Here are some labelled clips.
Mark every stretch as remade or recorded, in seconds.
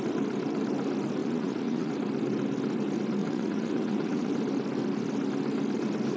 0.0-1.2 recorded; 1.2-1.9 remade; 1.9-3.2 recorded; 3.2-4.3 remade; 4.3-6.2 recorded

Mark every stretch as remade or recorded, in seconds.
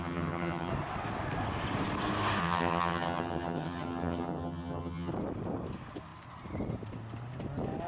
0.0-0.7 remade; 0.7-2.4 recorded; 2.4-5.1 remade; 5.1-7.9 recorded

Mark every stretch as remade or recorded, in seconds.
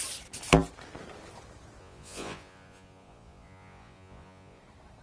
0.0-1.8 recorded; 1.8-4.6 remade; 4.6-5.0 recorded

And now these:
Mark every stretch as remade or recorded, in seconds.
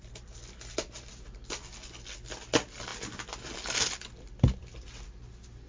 0.0-5.7 recorded